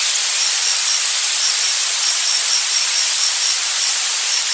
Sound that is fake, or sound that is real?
fake